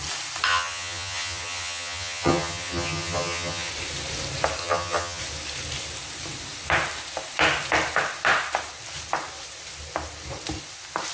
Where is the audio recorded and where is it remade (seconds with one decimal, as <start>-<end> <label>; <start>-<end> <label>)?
0.0-0.5 recorded; 0.5-3.7 remade; 3.7-4.6 recorded; 4.6-5.2 remade; 5.2-11.1 recorded